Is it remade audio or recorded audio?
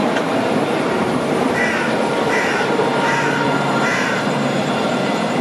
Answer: remade